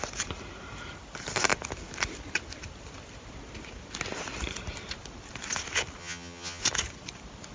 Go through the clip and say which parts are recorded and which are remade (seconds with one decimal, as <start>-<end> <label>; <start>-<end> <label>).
0.0-6.0 recorded; 6.0-6.6 remade; 6.6-7.5 recorded